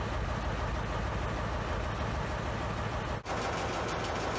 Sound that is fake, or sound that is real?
real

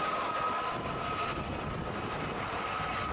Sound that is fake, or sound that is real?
fake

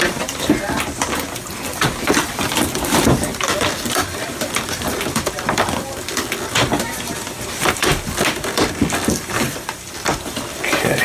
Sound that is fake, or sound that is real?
fake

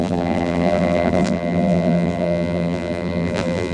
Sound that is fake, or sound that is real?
fake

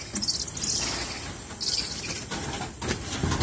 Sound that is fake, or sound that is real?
real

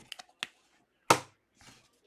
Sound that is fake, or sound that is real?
real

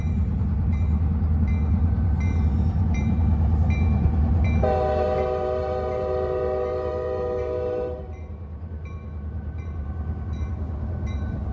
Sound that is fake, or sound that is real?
fake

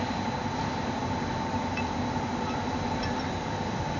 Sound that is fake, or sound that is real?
fake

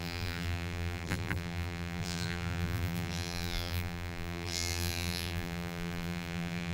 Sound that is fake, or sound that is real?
fake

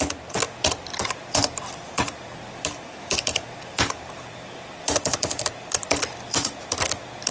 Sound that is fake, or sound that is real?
fake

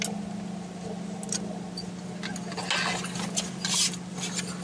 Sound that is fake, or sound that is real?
real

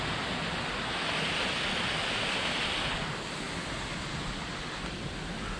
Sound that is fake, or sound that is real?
real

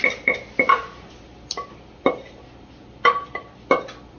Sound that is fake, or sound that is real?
real